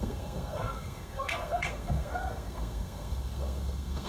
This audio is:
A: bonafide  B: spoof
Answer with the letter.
B